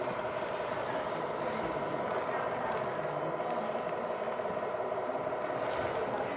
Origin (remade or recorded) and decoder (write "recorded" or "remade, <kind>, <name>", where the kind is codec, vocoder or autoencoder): recorded